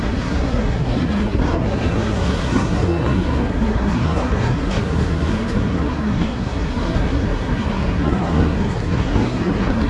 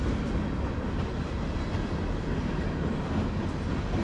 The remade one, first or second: first